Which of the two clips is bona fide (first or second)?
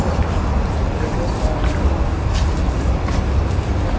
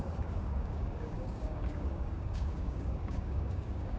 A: first